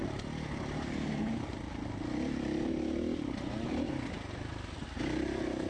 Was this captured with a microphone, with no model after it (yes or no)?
yes